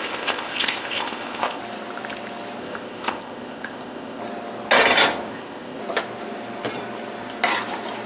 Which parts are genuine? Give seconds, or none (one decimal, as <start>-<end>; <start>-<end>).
1.6-2.6; 4.2-5.3; 5.8-8.1